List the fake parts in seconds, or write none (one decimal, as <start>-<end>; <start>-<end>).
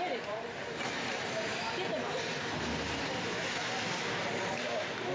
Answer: none